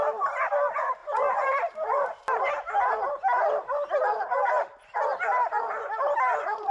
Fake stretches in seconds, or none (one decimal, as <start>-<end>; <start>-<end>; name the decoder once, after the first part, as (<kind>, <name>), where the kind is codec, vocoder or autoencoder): 1.0-3.1 (vocoder, BigVGAN v2)